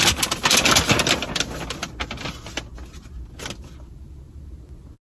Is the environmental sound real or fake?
real